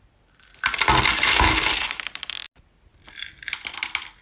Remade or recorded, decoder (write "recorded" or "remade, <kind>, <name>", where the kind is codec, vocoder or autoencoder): recorded